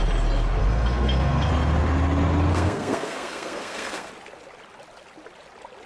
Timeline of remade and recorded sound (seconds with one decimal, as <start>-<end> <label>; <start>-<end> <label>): 0.0-0.6 recorded; 0.6-1.5 remade; 1.5-2.5 recorded; 2.5-4.1 remade; 4.1-5.9 recorded